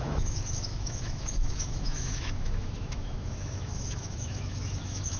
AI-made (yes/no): yes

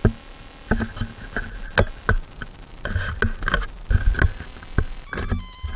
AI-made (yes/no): no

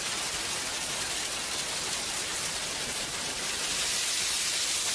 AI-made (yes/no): no